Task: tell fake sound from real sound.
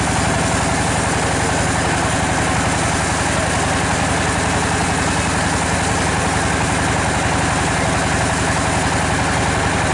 real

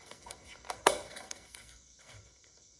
fake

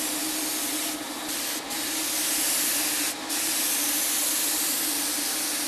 real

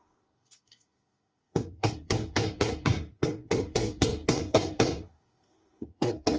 fake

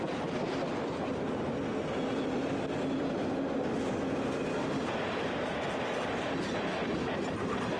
real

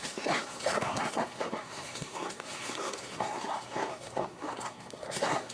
fake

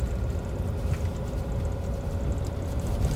real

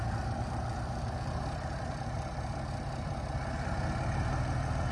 real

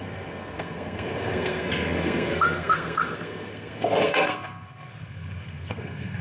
fake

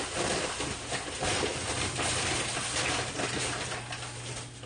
real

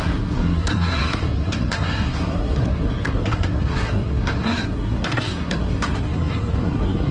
fake